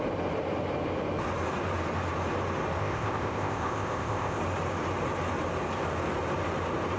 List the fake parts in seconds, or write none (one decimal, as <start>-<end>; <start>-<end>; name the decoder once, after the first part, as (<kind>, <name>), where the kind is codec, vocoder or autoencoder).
2.8-4.4 (codec, ZipCodec)